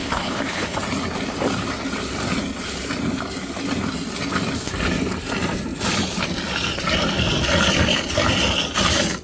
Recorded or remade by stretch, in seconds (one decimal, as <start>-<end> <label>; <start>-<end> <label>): 0.0-0.8 remade; 0.8-9.2 recorded